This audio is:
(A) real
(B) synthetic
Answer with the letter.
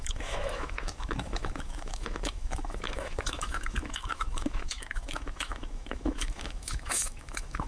B